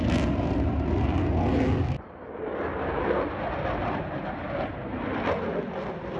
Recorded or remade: recorded